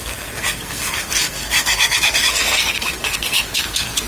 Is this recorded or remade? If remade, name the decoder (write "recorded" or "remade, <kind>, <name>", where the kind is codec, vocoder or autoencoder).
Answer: remade, codec, SNAC